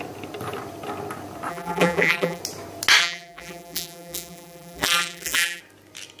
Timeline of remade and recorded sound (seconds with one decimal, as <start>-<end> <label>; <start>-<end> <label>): 0.0-1.5 recorded; 1.5-2.4 remade; 2.4-3.0 recorded; 3.0-5.6 remade; 5.6-6.2 recorded